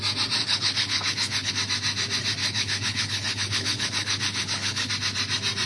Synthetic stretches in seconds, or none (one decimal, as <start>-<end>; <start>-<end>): 0.4-1.5; 2.4-4.9